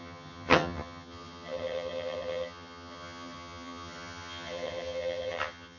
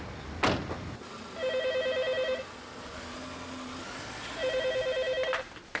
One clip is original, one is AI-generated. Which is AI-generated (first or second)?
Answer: first